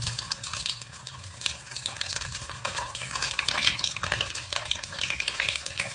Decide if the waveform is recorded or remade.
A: remade